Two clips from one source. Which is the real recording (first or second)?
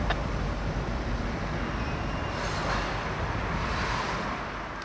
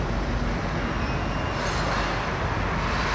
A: second